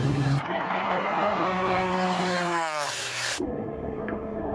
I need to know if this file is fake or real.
fake